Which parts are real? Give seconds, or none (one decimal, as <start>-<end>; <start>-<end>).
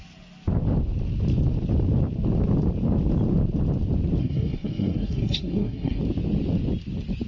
0.0-4.2; 6.0-7.3